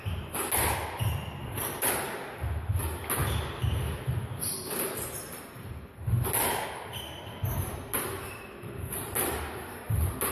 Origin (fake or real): real